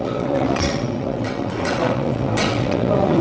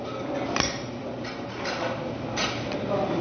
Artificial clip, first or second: first